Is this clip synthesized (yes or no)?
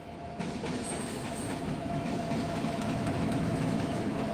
yes